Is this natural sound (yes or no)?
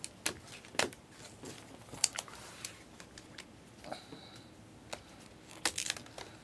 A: yes